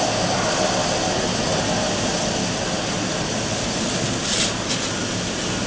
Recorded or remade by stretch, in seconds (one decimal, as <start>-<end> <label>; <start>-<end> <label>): 0.0-5.7 recorded